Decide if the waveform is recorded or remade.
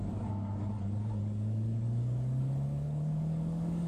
remade